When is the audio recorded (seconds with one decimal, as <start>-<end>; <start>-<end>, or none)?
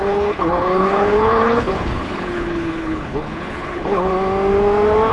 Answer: 4.1-5.1